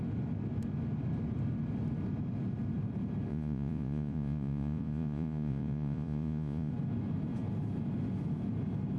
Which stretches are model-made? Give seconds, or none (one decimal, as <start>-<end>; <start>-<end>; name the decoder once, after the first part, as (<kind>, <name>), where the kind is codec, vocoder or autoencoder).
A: 3.3-6.7 (vocoder, Vocos)